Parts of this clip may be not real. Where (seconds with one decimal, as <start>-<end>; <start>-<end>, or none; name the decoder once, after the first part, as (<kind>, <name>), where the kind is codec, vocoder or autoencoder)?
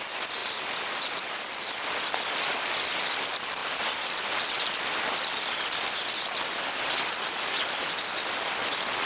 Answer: none